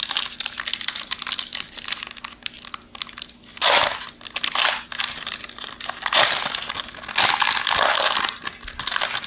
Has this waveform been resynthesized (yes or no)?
no